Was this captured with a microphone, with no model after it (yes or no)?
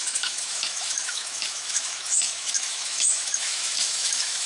no